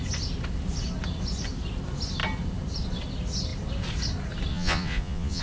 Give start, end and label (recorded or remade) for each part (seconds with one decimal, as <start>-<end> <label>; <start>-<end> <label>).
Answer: 0.0-4.5 recorded; 4.5-5.4 remade